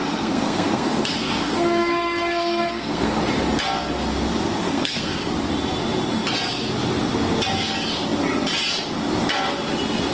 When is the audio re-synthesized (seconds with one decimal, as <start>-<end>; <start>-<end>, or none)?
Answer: 0.0-3.2; 4.6-5.3